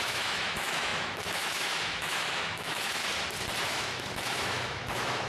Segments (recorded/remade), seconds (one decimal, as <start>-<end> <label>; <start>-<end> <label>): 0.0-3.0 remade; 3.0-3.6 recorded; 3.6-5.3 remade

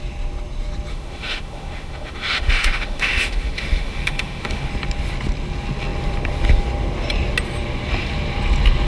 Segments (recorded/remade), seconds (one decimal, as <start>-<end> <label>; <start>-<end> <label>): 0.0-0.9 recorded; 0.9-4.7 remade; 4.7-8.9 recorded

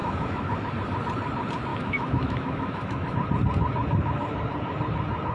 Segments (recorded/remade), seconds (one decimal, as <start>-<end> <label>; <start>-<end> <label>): 0.0-0.7 remade; 0.7-1.7 recorded; 1.7-3.1 remade; 3.1-5.3 recorded